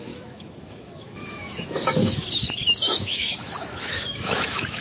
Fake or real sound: fake